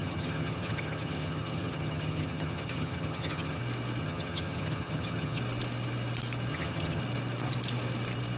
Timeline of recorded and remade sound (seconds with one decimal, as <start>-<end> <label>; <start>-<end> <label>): 0.0-3.6 remade; 3.6-4.0 recorded; 4.0-5.4 remade; 5.4-6.5 recorded; 6.5-7.0 remade; 7.0-8.4 recorded